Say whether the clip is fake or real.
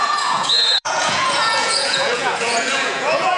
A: fake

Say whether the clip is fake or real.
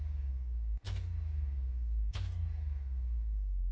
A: fake